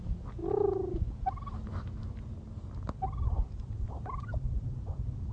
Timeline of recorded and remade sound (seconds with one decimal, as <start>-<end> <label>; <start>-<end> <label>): 0.0-5.3 recorded